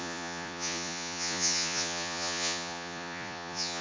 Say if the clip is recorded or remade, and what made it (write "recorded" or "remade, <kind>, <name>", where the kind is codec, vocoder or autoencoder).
remade, vocoder, Vocos